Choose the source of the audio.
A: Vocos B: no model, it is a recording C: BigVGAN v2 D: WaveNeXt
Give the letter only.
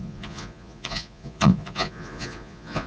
A